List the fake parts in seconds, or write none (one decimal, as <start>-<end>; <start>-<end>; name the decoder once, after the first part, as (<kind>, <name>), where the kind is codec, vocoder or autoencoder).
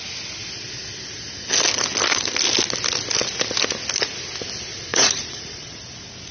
4.9-5.8 (vocoder, Vocos)